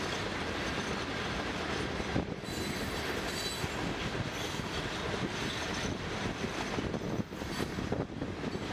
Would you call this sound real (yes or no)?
yes